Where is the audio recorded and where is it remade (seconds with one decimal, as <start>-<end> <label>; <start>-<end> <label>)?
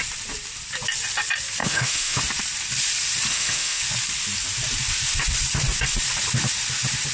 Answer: 0.0-1.6 recorded; 1.6-2.2 remade; 2.2-3.3 recorded; 3.3-3.8 remade; 3.8-7.1 recorded